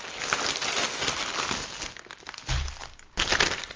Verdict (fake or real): real